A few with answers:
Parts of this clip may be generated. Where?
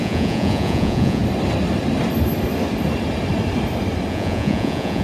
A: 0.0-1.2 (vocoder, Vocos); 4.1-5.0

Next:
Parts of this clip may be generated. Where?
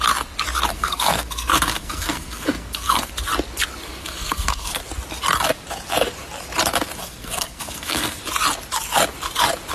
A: 0.7-3.1 (codec, SNAC); 4.0-4.8; 7.0-8.2